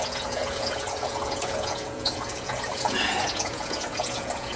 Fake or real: fake